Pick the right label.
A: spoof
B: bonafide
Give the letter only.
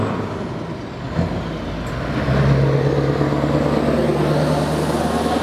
B